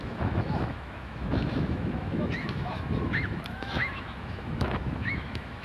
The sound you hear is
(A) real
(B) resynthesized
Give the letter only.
B